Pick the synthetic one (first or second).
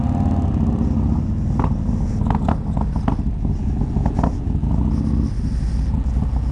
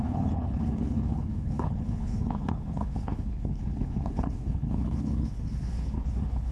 second